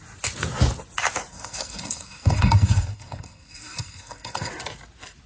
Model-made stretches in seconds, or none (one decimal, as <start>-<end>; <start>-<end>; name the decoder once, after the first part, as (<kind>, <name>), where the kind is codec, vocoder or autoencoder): 1.3-4.5 (codec, SNAC)